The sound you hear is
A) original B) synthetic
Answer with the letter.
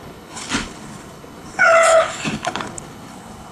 B